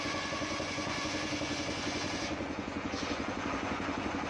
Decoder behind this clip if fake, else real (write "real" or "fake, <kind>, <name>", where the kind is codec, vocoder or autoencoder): fake, vocoder, Vocos